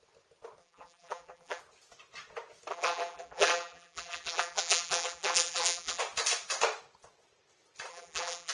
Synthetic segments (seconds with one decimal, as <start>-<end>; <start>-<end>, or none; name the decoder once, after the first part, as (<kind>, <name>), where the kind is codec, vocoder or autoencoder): 0.6-1.6 (vocoder, BigVGAN v2); 2.7-6.0; 7.9-8.5